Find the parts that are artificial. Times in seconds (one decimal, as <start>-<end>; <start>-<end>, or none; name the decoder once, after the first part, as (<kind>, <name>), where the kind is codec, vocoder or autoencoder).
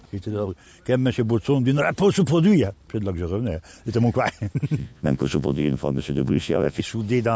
4.8-6.8 (vocoder, Vocos)